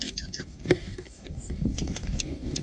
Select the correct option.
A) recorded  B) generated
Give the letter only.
B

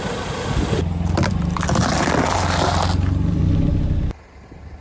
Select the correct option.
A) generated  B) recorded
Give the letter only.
B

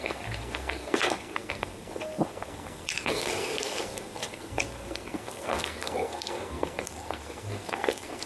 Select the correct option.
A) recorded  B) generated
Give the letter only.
B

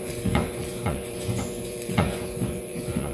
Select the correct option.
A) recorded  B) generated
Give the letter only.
B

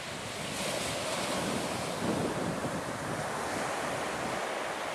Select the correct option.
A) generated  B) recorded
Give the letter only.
B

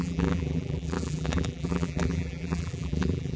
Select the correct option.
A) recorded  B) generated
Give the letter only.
B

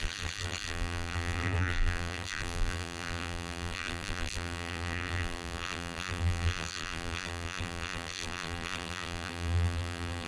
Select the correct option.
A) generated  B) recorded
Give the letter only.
A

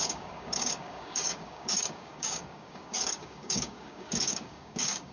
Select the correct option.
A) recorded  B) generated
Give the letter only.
B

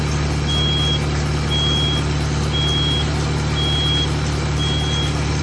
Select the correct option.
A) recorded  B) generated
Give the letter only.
A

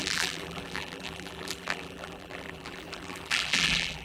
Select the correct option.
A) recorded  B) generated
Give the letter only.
B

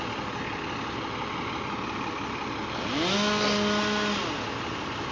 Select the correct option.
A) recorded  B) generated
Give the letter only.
A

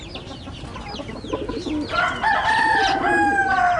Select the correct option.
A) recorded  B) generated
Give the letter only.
A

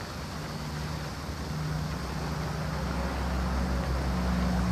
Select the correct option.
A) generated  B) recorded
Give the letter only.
B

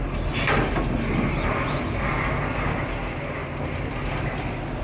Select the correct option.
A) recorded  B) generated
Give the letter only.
A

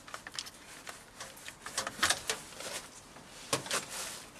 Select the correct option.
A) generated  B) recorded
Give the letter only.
B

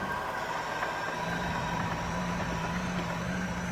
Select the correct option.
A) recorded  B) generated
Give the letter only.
B